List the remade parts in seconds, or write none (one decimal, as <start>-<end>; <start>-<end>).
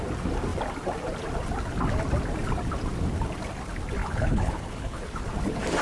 4.0-5.0